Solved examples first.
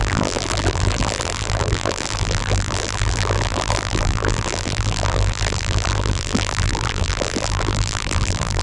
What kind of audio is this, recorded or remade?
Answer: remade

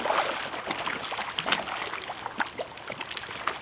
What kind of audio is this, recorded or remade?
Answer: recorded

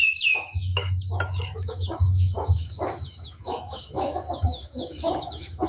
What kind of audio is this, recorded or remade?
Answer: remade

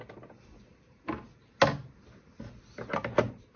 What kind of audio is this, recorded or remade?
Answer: recorded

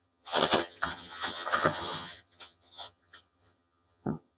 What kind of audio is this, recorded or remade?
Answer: remade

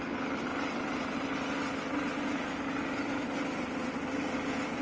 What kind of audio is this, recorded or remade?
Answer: recorded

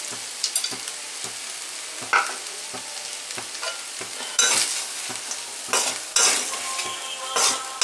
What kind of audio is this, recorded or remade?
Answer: recorded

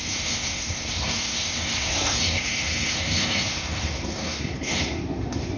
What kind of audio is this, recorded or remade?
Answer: remade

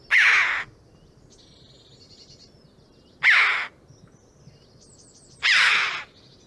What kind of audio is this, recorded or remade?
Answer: recorded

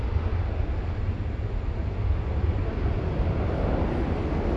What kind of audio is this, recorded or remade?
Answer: recorded